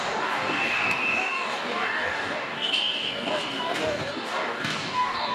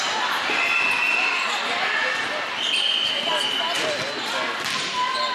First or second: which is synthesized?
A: first